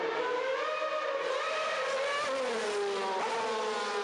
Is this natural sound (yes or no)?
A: yes